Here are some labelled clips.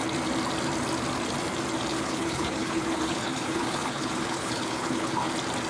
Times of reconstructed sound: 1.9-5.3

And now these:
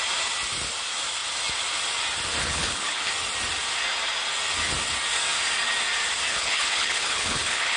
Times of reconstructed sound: 2.4-3.1; 6.3-7.8

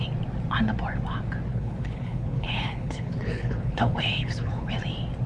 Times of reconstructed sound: 1.5-4.7

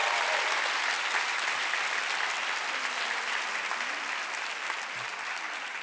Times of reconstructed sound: none

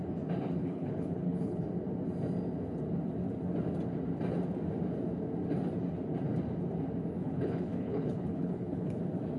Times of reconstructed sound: 0.7-1.6; 7.2-9.0